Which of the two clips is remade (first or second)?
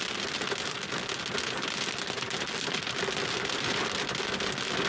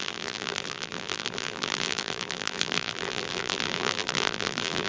second